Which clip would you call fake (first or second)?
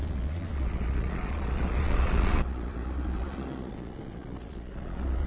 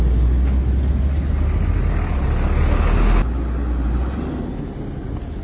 first